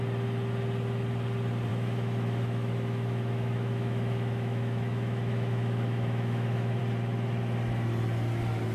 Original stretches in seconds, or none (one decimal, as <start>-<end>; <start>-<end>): 0.0-1.7; 6.8-8.7